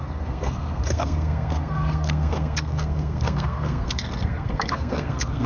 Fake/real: fake